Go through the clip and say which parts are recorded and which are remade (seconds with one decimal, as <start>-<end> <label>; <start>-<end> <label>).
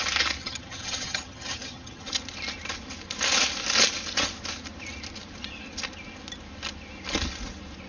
0.0-0.4 recorded; 0.4-2.1 remade; 2.1-7.9 recorded